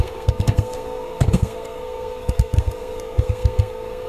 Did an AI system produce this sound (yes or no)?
yes